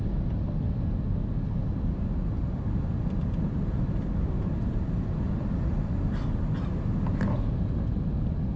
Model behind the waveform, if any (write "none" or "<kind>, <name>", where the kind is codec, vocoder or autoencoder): none